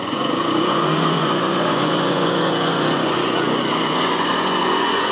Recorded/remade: remade